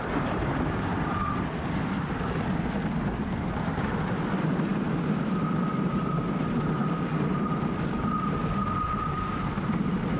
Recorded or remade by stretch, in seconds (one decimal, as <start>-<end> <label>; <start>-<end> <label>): 0.0-10.2 recorded